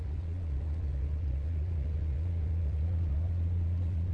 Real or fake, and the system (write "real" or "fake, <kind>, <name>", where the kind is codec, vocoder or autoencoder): fake, vocoder, Vocos